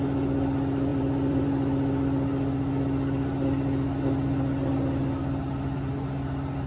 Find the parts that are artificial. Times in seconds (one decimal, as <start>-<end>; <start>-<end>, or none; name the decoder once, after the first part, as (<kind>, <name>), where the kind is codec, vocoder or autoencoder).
0.9-1.5 (vocoder, BigVGAN v2)